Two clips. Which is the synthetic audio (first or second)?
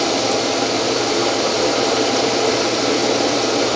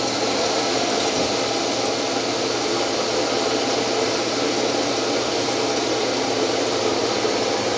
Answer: first